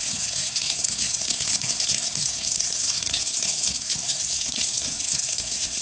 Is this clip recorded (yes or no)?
no